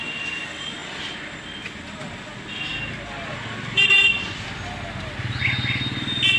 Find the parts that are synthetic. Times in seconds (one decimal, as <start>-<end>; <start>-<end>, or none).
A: none